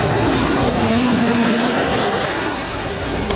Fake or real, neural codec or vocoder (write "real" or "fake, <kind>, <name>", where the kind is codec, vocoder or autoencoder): fake, codec, SNAC